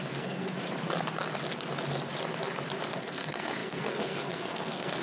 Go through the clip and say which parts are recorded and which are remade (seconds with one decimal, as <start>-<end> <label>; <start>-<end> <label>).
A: 0.0-0.6 remade; 0.6-3.0 recorded; 3.0-5.0 remade